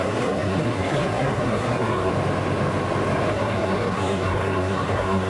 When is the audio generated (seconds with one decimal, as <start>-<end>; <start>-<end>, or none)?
0.0-2.1; 3.3-5.3